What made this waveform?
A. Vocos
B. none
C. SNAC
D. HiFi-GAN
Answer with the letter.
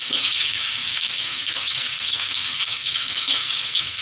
C